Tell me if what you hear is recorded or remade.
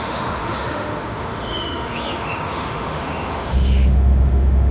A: remade